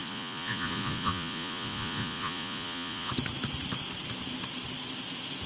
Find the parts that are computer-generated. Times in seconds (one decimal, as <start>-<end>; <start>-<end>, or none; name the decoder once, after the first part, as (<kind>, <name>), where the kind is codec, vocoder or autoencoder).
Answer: 0.0-3.1 (vocoder, Vocos)